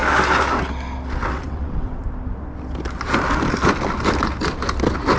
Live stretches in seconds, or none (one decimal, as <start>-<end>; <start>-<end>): 0.0-1.2; 2.0-5.2